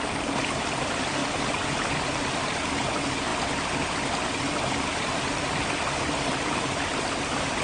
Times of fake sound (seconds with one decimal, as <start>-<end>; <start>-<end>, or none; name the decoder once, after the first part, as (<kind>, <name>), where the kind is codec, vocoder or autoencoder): 3.3-5.7 (vocoder, BigVGAN v2)